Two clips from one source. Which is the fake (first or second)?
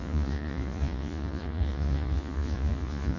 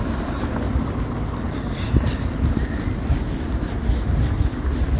first